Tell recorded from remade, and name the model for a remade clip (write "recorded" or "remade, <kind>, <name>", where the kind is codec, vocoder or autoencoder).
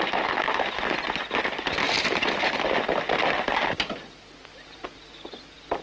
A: recorded